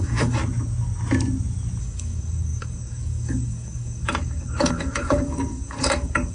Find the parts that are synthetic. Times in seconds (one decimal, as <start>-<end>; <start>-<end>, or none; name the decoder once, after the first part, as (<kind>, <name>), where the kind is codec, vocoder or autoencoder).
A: 0.0-0.4 (codec, DAC); 1.8-6.3